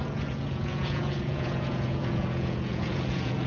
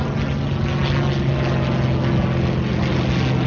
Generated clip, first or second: first